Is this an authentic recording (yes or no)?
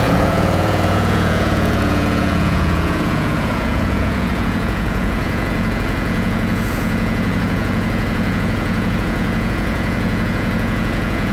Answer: no